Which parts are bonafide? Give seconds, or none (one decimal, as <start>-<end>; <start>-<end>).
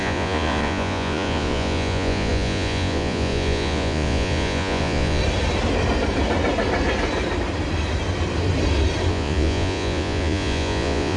5.2-9.1